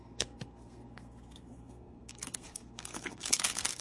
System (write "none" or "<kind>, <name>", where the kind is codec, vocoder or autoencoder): codec, SNAC